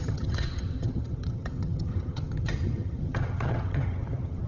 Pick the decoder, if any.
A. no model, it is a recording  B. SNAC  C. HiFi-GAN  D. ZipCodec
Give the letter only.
C